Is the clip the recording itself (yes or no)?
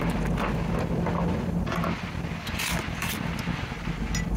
yes